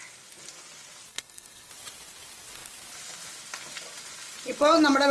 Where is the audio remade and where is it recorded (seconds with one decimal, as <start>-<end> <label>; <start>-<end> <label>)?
0.0-1.1 recorded; 1.1-1.7 remade; 1.7-5.1 recorded